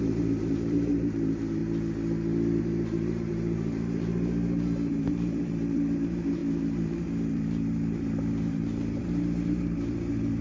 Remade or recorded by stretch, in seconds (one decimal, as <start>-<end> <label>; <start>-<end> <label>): 0.0-1.6 remade; 1.6-2.6 recorded; 2.6-10.4 remade